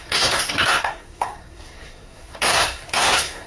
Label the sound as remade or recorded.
remade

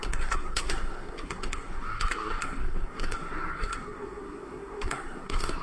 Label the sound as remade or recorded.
remade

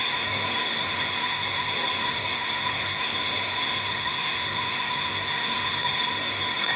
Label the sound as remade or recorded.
remade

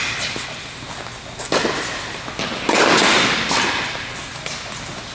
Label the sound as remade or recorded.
recorded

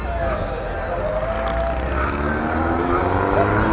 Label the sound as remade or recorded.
recorded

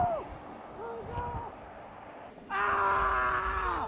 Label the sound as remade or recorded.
recorded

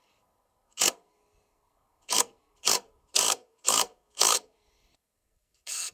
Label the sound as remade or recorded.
remade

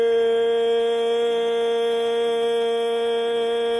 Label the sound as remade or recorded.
recorded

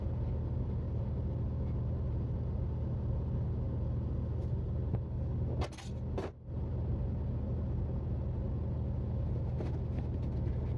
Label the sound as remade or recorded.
recorded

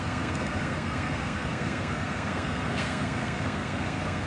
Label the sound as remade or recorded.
remade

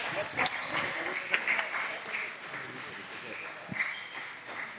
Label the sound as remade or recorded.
recorded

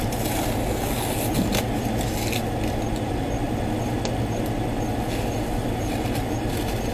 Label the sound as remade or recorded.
recorded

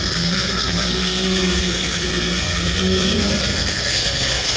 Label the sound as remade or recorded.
remade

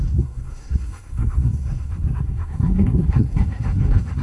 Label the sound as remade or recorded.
remade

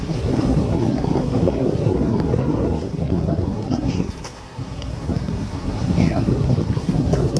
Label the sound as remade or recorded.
remade